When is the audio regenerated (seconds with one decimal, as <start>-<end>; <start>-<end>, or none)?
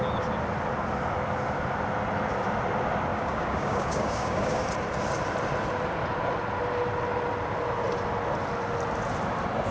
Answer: 3.1-4.6